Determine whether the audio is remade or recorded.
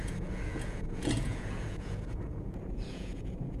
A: remade